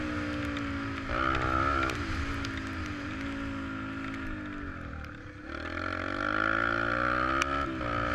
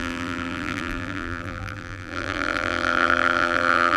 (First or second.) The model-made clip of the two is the second